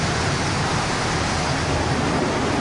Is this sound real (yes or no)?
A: yes